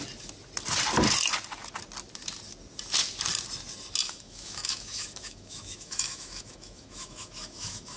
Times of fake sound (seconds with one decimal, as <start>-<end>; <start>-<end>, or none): 4.0-8.0